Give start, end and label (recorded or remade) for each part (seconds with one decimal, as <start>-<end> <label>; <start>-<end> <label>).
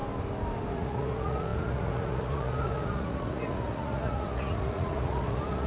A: 0.0-0.7 recorded; 0.7-5.7 remade